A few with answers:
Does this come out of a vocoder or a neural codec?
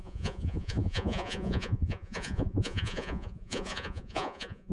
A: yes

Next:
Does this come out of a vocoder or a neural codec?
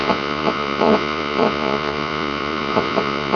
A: yes